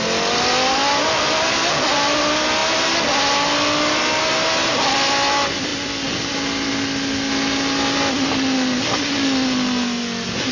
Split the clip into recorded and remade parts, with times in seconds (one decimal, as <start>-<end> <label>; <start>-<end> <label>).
0.0-10.5 recorded